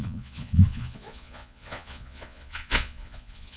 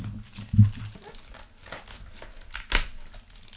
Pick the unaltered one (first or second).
second